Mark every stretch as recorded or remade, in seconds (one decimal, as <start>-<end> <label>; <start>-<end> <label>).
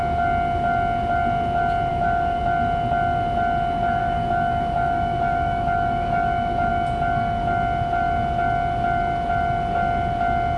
0.0-1.9 recorded; 1.9-2.4 remade; 2.4-4.0 recorded; 4.0-6.7 remade; 6.7-10.6 recorded